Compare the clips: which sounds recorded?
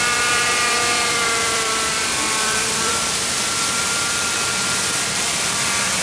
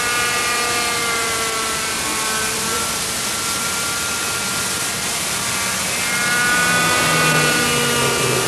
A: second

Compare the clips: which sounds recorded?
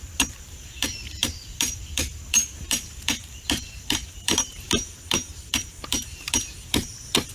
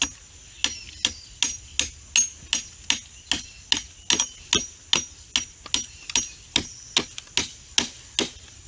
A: second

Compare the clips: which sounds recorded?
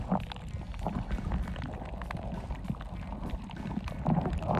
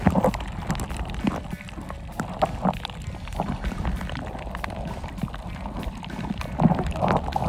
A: first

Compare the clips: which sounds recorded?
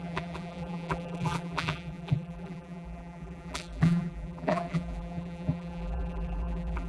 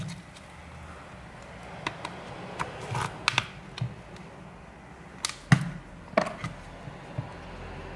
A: second